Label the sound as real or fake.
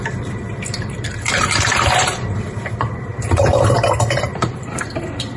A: fake